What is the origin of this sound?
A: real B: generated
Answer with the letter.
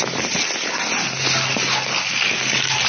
A